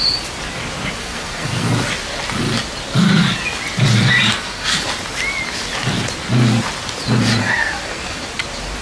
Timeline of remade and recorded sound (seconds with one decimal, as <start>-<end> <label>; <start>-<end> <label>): 0.0-1.0 recorded; 1.0-1.7 remade; 1.7-4.3 recorded; 4.3-4.9 remade; 4.9-7.4 recorded; 7.4-8.2 remade; 8.2-8.8 recorded